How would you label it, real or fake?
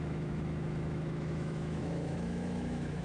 fake